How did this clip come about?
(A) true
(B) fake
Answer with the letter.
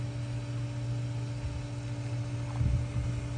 A